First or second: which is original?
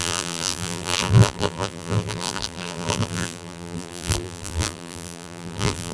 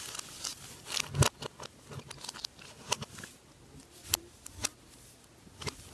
second